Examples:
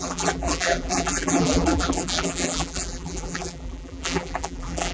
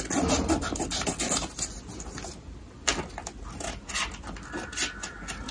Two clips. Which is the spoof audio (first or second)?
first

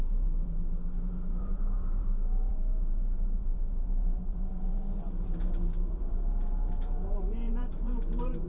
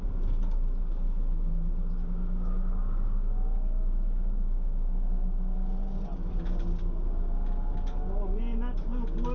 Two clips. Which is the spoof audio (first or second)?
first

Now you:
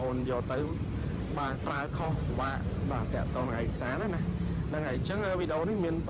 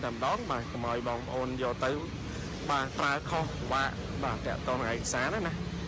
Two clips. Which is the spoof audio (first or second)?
first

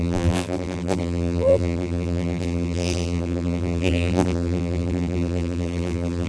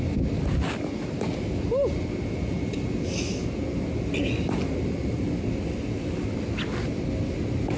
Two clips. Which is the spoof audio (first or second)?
first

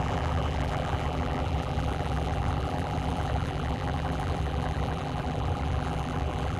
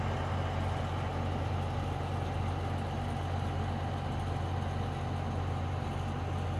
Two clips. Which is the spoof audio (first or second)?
first